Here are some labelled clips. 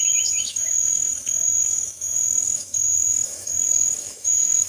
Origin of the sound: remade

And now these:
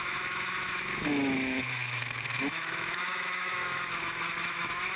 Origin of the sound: remade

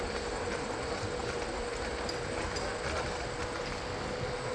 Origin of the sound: recorded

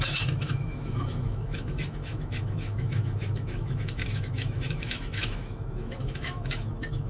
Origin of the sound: remade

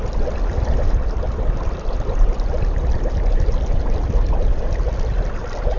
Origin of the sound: recorded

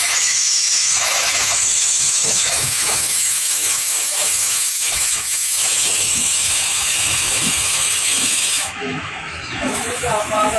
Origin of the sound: remade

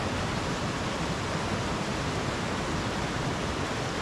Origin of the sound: recorded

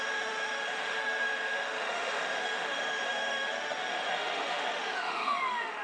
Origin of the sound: remade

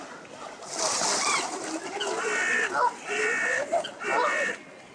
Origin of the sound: recorded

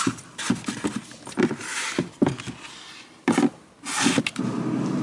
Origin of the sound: recorded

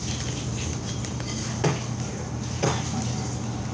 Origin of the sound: recorded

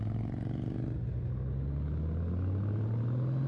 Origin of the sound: recorded